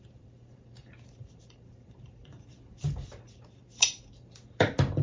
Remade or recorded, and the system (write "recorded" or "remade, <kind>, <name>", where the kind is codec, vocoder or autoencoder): remade, vocoder, BigVGAN v2